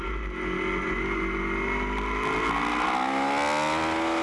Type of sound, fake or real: real